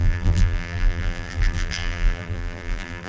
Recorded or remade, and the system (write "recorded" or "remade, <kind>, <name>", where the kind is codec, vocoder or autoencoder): remade, vocoder, BigVGAN v2